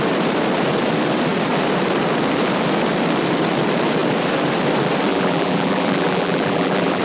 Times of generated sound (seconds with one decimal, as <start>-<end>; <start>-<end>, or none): 5.1-7.0